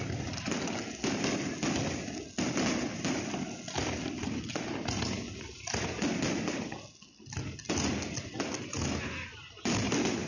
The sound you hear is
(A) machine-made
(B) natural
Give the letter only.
B